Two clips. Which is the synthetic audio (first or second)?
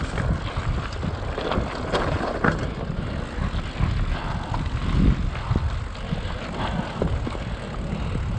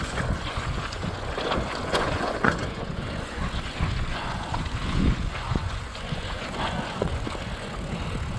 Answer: second